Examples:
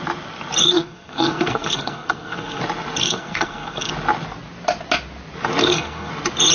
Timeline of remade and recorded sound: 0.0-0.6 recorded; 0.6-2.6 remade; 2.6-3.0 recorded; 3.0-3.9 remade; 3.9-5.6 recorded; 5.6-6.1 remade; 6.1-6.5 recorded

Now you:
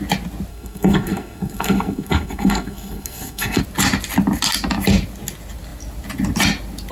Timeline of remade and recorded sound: 0.0-0.5 recorded; 0.5-3.6 remade; 3.6-6.9 recorded

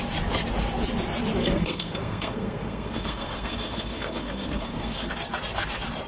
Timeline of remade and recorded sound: 0.0-1.4 recorded; 1.4-5.1 remade; 5.1-6.1 recorded

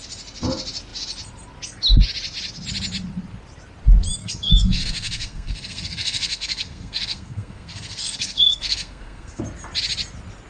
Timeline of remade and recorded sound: 0.0-4.2 recorded; 4.2-9.4 remade; 9.4-10.5 recorded